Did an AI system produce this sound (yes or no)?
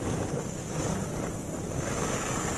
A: no